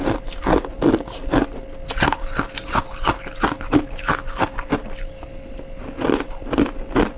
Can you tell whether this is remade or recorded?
recorded